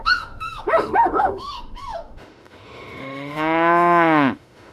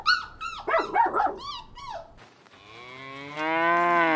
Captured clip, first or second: second